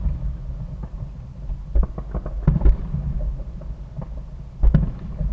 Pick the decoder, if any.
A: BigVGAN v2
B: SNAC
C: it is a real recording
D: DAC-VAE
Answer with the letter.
C